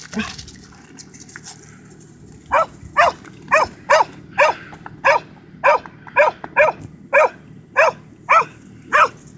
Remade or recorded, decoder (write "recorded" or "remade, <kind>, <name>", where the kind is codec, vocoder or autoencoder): recorded